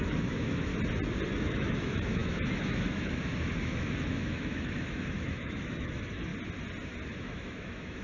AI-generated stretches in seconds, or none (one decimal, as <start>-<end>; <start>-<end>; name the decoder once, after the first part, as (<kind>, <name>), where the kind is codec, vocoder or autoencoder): 0.0-0.7 (autoencoder, DAC-VAE); 1.3-6.3; 7.1-8.0